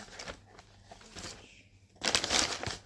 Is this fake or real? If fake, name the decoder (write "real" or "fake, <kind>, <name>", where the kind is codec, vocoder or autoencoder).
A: real